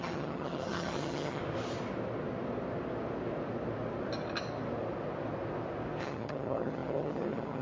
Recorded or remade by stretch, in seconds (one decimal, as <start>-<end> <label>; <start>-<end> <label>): 0.0-1.4 remade; 1.4-6.0 recorded; 6.0-7.6 remade